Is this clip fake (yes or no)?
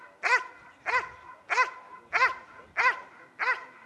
no